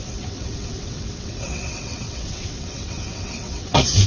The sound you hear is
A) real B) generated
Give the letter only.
B